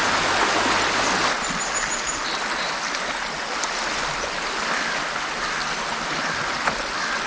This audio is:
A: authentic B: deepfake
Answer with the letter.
A